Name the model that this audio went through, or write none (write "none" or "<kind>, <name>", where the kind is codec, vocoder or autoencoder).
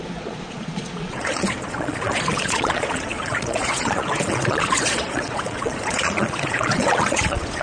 vocoder, Vocos